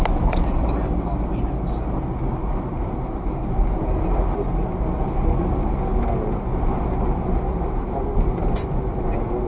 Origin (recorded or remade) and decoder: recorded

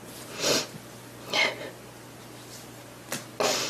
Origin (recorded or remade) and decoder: recorded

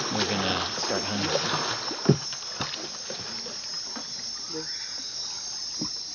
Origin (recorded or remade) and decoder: recorded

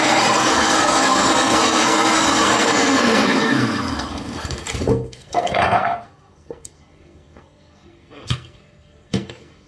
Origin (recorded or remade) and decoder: remade, codec, SNAC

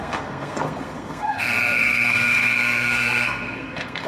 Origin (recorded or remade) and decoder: remade, codec, SNAC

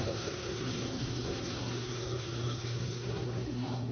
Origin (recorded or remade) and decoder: remade, codec, SNAC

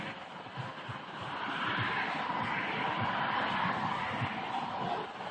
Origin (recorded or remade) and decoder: recorded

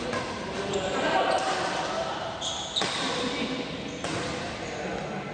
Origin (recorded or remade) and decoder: recorded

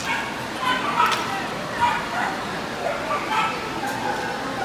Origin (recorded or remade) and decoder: recorded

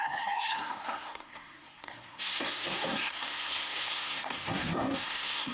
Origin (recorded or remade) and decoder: remade, codec, SNAC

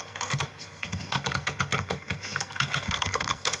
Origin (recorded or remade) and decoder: remade, codec, SNAC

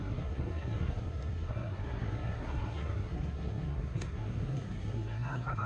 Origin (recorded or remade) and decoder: remade, codec, SNAC